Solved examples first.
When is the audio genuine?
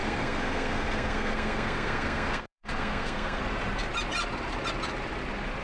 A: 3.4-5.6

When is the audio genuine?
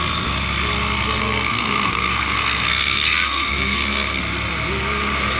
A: 0.0-1.2; 4.2-5.4